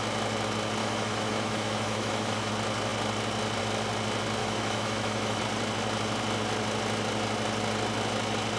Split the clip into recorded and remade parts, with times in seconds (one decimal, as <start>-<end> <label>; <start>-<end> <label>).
0.0-0.8 recorded; 0.8-2.5 remade; 2.5-4.4 recorded; 4.4-5.4 remade; 5.4-8.6 recorded